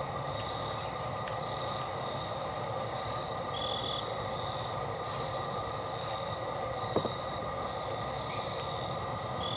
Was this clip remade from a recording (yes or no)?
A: no